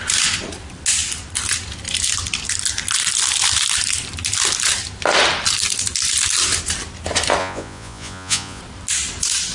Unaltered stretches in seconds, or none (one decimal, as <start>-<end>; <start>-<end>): 0.0-7.4; 8.6-9.5